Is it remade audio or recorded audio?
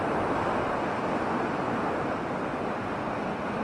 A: recorded